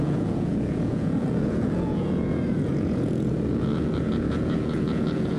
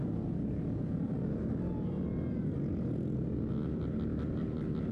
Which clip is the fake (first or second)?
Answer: first